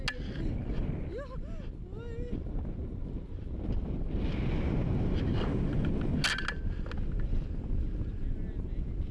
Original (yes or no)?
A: yes